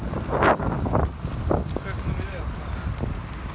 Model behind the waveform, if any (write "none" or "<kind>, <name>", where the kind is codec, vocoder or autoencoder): none